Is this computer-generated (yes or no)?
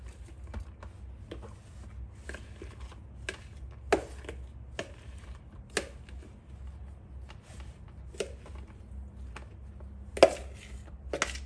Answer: no